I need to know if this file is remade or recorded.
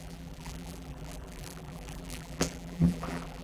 remade